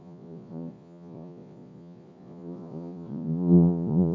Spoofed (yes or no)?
yes